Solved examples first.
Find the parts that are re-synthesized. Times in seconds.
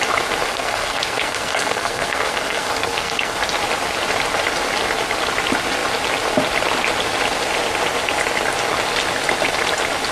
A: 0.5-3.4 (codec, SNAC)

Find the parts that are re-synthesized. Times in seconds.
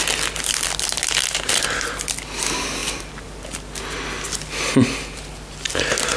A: none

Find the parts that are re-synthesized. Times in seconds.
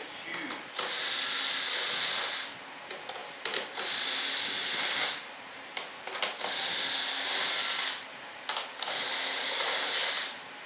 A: none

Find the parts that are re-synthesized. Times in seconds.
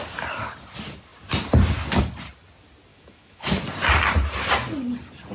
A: 2.9-3.6 (autoencoder, DAC-VAE)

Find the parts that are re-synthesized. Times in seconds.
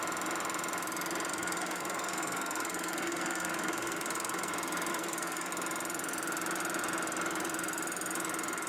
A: 1.3-4.5 (codec, SNAC); 4.9-5.5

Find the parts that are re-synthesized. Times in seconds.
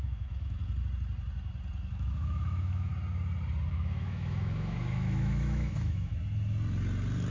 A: 0.0-0.6 (autoencoder, DAC-VAE); 1.9-2.9; 3.7-6.1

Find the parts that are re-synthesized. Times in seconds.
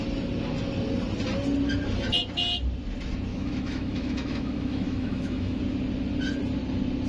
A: 3.3-5.6 (autoencoder, DAC-VAE)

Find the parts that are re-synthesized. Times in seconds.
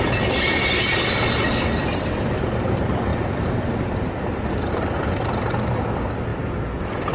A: none